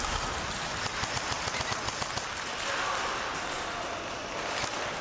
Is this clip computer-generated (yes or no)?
no